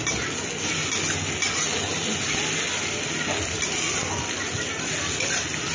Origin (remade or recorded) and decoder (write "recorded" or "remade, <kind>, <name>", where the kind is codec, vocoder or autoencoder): recorded